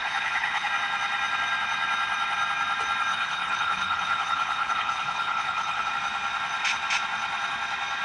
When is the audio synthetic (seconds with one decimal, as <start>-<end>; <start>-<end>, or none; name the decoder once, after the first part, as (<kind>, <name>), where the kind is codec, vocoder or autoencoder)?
0.0-0.7 (codec, HILCodec); 3.1-5.9